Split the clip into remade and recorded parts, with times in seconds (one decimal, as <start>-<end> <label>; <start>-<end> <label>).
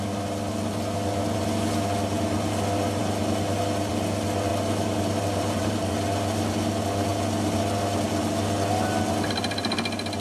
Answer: 0.0-4.5 recorded; 4.5-5.9 remade; 5.9-10.2 recorded